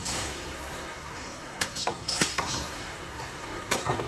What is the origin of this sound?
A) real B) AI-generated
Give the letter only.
B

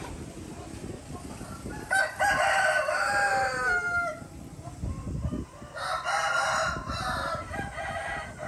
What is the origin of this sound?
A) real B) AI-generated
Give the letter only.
A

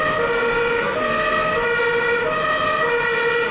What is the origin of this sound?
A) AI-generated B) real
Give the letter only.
B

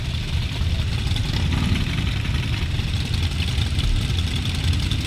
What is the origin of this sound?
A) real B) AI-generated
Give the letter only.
A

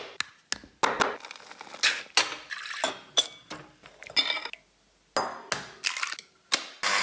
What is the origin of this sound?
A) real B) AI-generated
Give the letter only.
A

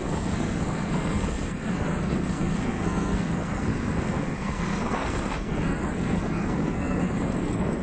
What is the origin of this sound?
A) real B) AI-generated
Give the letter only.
B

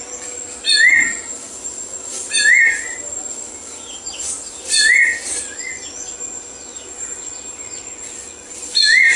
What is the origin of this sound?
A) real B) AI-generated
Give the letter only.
A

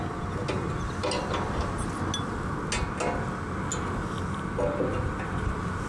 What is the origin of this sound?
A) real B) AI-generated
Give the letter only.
A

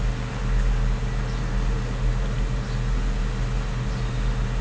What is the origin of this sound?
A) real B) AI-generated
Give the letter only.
A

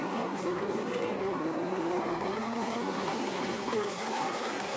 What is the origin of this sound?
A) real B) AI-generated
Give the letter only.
B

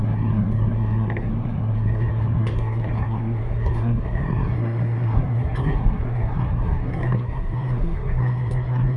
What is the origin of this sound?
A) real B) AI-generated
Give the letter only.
B